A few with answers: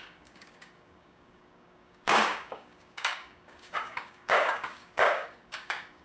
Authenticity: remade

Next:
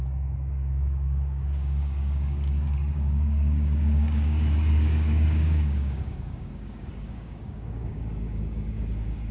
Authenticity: remade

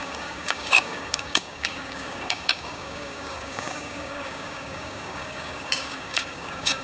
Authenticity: remade